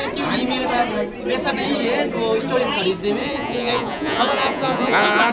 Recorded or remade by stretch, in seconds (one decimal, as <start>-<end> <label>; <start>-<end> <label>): 0.0-3.2 recorded; 3.2-5.3 remade